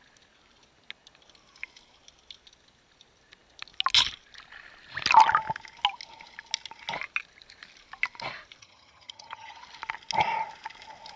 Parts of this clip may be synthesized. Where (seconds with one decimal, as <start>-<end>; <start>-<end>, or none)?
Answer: 8.6-9.6